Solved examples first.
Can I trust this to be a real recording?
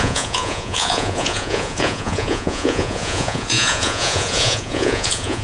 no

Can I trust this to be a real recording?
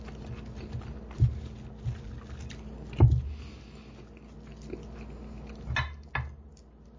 yes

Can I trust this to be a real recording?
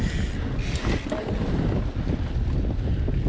yes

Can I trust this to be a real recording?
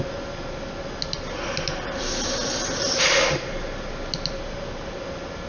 yes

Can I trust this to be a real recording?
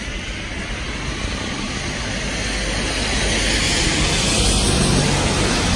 yes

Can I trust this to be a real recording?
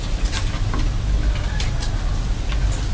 yes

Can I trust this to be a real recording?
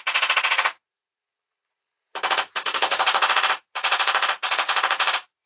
no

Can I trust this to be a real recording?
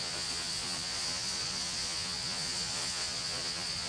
no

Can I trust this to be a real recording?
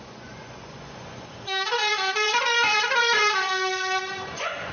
no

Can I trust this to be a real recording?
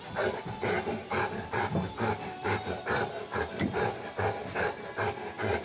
yes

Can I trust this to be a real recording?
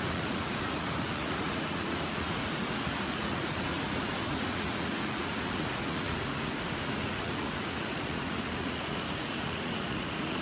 no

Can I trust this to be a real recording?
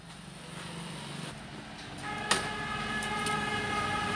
yes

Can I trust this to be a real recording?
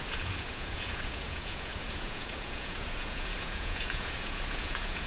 no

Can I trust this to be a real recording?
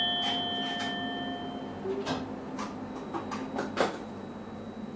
yes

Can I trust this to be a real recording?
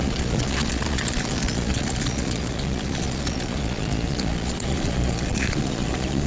no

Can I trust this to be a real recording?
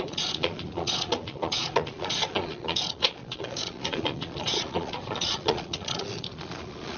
no